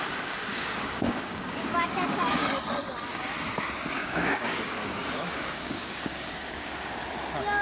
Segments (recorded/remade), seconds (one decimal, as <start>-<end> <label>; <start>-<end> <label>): 0.0-0.5 recorded; 0.5-2.5 remade; 2.5-4.0 recorded; 4.0-7.0 remade; 7.0-7.6 recorded